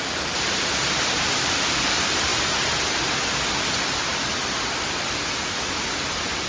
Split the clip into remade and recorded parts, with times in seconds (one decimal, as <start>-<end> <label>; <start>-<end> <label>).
0.0-2.3 remade; 2.3-3.6 recorded; 3.6-4.1 remade; 4.1-5.0 recorded; 5.0-6.5 remade